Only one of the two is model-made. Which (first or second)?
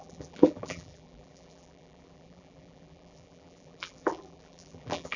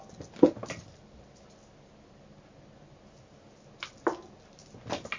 first